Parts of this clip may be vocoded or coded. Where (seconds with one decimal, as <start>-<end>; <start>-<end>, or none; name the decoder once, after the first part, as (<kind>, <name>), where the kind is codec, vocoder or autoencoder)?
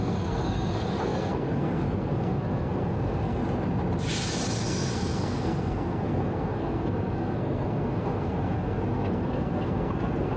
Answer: 0.0-3.4 (codec, SNAC); 4.6-10.4